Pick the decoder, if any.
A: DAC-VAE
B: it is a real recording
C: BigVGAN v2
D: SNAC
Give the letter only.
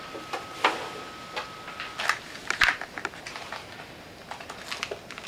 B